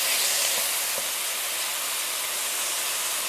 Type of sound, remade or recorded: recorded